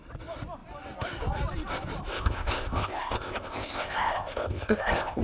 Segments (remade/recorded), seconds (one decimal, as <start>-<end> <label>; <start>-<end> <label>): 0.0-2.1 recorded; 2.1-5.2 remade